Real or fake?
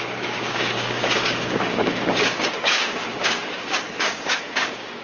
fake